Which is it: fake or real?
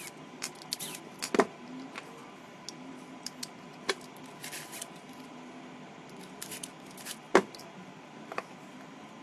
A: real